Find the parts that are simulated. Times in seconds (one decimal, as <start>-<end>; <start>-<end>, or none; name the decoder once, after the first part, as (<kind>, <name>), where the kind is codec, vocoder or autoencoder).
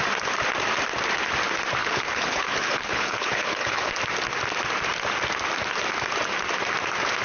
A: 1.8-3.9 (codec, HILCodec)